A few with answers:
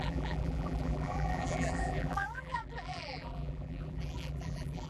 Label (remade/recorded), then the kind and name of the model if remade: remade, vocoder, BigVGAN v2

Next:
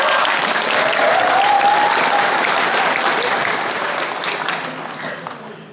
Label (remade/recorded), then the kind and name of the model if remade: recorded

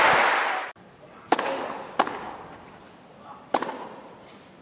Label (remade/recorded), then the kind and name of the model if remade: recorded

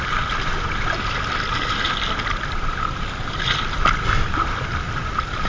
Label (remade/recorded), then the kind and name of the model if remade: recorded